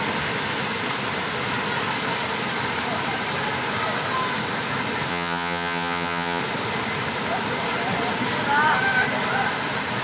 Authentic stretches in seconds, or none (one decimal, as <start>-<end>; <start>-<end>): 0.0-5.1; 6.4-10.0